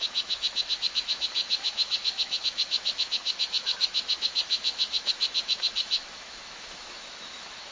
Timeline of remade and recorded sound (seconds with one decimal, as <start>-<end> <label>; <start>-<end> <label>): 0.0-7.7 remade